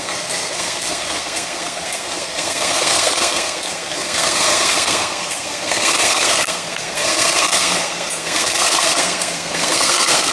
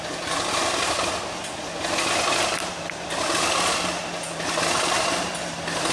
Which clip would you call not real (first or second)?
first